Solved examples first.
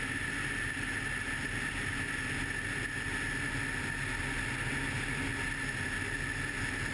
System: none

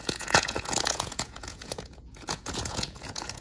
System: vocoder, Vocos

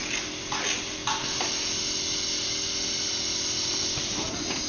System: none